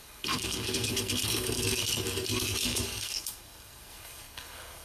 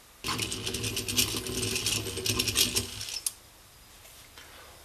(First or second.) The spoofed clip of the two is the first